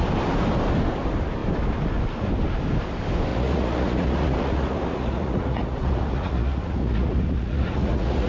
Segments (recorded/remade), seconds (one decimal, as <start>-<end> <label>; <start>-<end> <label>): 0.0-3.3 recorded; 3.3-8.3 remade

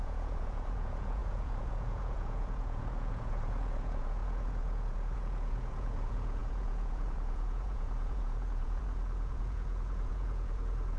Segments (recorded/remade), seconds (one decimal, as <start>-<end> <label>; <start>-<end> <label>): 0.0-11.0 remade

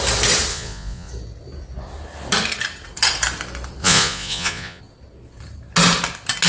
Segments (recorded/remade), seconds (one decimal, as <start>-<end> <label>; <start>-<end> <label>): 0.0-0.5 recorded; 0.5-1.1 remade; 1.1-3.8 recorded; 3.8-4.8 remade; 4.8-6.5 recorded